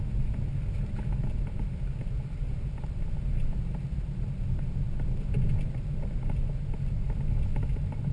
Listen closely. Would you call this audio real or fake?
real